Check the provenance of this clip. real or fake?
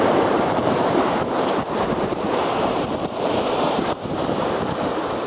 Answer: fake